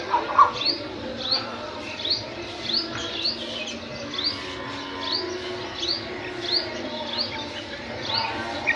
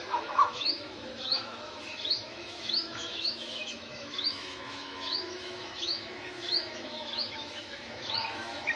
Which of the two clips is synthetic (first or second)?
second